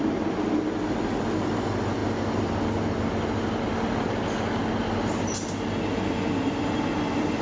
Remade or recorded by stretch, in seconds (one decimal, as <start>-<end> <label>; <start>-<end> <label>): 0.0-7.4 recorded